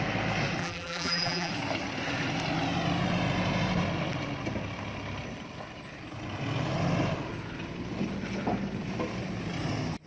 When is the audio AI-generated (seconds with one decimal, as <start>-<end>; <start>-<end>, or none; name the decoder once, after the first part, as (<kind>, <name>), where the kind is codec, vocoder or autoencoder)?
0.6-1.5 (vocoder, BigVGAN v2)